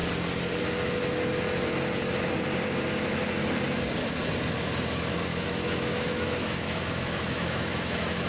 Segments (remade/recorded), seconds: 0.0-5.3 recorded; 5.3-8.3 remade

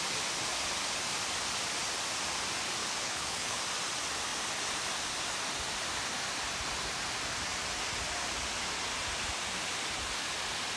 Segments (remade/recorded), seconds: 0.0-2.8 recorded; 2.8-3.6 remade; 3.6-10.8 recorded

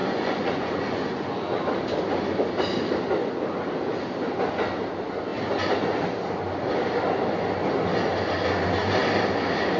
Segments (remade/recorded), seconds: 0.0-1.6 remade; 1.6-9.8 recorded

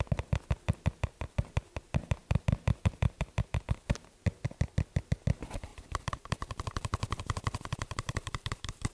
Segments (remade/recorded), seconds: 0.0-2.2 recorded; 2.2-3.6 remade; 3.6-5.7 recorded; 5.7-8.9 remade

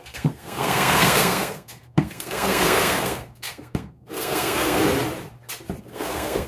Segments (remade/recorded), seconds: 0.0-4.8 remade; 4.8-5.8 recorded; 5.8-6.5 remade

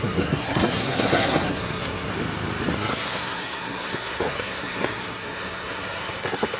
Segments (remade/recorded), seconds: 0.0-2.1 remade; 2.1-2.7 recorded; 2.7-6.6 remade

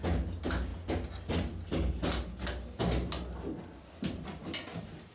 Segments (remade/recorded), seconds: 0.0-5.1 recorded